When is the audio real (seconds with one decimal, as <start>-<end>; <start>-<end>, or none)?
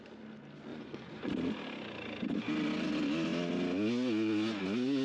0.0-0.7; 1.3-5.0